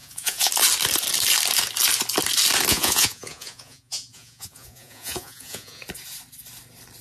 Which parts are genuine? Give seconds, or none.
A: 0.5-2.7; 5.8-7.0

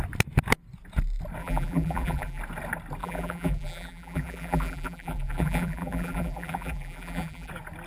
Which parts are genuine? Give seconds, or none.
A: 0.0-1.4; 2.4-3.0; 7.5-7.9

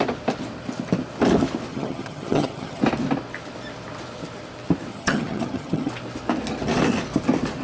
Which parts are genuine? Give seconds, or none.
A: 0.0-1.7; 2.8-4.9; 5.9-7.6